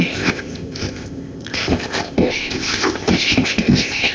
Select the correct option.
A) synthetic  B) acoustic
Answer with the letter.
A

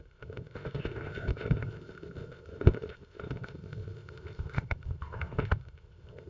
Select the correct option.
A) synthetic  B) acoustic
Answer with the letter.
A